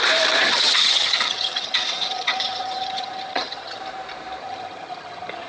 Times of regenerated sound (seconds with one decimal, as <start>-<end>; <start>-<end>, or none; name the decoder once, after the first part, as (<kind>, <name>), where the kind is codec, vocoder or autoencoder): 0.5-3.8 (vocoder, HiFi-GAN); 4.4-5.5